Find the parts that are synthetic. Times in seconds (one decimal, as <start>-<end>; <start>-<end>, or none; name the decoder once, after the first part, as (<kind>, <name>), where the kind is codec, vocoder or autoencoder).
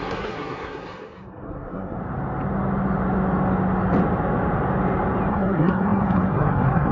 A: 0.0-2.0 (codec, SNAC); 5.3-6.9